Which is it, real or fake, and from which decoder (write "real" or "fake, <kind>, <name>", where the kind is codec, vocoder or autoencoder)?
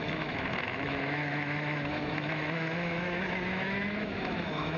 fake, autoencoder, DAC-VAE